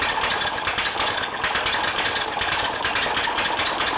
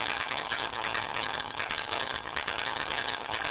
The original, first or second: first